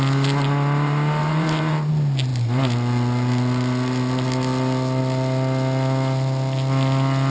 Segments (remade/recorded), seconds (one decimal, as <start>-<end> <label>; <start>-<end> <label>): 0.0-1.2 recorded; 1.2-1.9 remade; 1.9-7.3 recorded